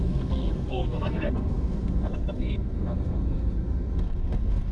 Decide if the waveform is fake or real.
fake